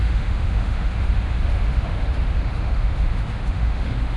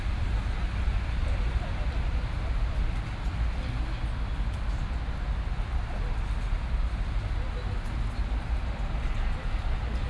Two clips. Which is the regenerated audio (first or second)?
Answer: first